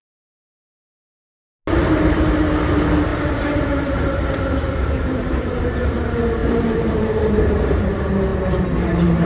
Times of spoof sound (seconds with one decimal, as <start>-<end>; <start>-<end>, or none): 3.1-6.0; 6.4-7.9